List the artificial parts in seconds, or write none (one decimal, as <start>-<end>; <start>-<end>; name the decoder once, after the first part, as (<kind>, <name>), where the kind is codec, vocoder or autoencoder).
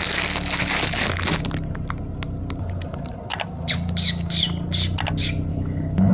5.5-6.1 (codec, HILCodec)